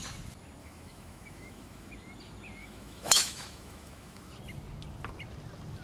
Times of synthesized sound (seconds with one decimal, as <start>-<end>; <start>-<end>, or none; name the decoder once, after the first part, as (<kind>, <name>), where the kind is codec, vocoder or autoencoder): 0.6-1.9 (autoencoder, DAC-VAE); 2.6-4.3